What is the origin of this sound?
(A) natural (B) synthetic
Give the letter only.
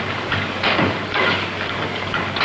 B